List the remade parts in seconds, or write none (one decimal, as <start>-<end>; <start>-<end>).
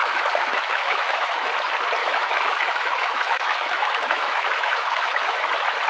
0.0-1.5; 2.0-5.5